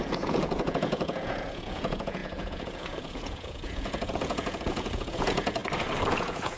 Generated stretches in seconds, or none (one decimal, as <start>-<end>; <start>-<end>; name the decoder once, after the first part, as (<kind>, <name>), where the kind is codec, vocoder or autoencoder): 0.0-5.6 (vocoder, Vocos); 6.1-6.6